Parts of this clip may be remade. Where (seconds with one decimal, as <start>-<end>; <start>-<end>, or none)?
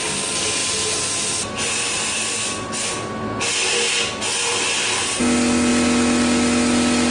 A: none